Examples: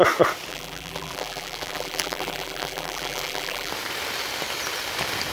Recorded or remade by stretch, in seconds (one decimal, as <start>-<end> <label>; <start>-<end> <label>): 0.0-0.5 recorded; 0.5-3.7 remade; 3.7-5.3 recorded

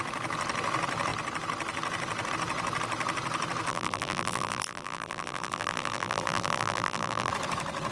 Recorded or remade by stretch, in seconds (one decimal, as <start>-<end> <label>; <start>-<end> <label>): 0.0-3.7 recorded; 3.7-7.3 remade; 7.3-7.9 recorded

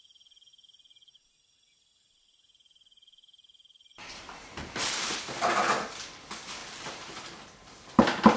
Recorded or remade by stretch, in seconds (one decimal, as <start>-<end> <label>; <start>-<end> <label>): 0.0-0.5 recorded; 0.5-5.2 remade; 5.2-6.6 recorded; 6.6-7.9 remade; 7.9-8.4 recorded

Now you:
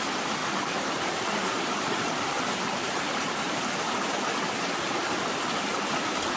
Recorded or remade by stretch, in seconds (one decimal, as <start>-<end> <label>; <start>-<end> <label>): 0.0-0.4 recorded; 0.4-3.6 remade; 3.6-6.4 recorded